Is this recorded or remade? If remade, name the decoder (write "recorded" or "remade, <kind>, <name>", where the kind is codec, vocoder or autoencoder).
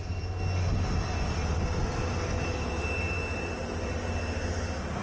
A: recorded